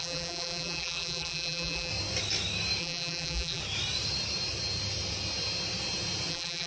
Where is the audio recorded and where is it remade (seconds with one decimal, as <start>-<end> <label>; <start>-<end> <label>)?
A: 0.0-1.9 remade; 1.9-2.8 recorded; 2.8-3.6 remade; 3.6-6.3 recorded; 6.3-6.7 remade